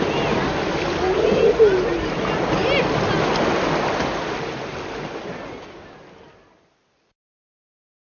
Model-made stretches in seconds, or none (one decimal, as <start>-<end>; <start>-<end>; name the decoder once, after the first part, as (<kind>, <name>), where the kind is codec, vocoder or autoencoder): none